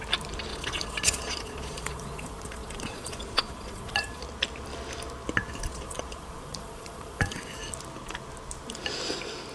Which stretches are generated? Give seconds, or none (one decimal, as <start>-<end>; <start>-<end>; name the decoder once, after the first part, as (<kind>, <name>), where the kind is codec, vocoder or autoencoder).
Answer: 0.5-4.2 (vocoder, Vocos); 5.7-7.5